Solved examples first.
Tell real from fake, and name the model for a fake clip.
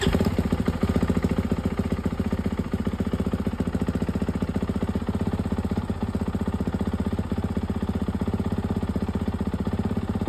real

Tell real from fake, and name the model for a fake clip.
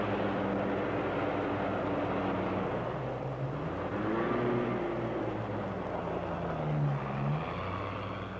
real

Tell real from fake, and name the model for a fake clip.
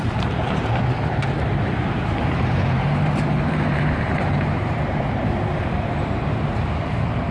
fake, vocoder, BigVGAN v2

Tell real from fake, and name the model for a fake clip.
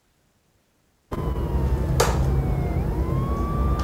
real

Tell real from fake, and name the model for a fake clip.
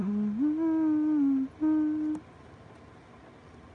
real